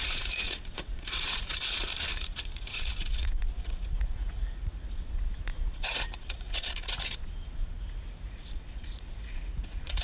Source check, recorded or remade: remade